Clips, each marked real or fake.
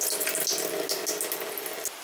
real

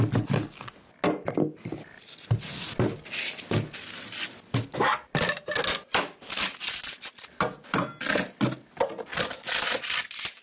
real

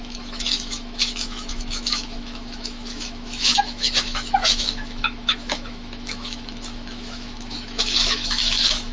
fake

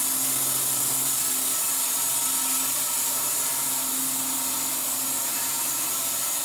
real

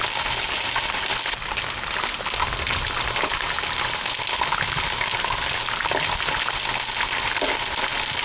real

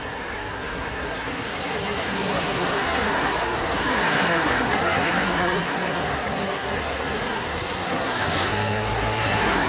fake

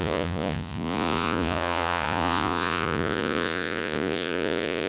fake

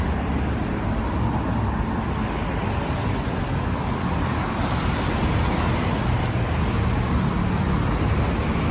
real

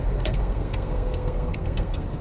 fake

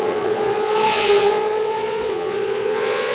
fake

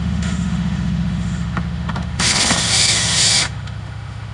fake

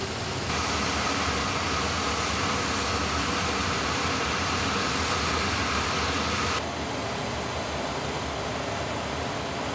real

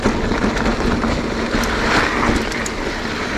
real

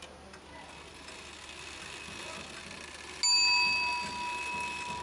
real